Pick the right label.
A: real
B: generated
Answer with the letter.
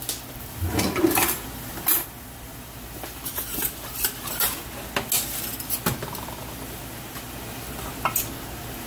A